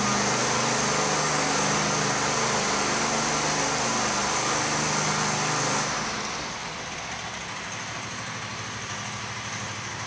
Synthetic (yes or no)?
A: no